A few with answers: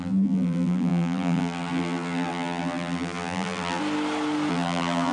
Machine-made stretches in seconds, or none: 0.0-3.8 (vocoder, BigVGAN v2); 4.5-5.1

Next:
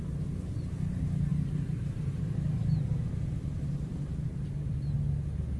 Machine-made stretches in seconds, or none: 1.3-3.0 (vocoder, BigVGAN v2); 3.9-4.5

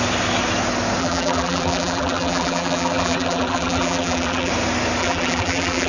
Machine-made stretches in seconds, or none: 1.0-4.5 (vocoder, BigVGAN v2); 5.0-5.9